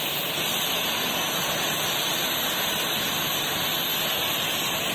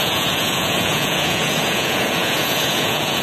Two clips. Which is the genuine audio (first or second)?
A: first